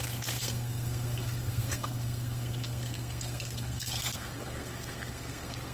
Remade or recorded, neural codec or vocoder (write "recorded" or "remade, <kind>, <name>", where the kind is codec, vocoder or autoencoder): remade, codec, SNAC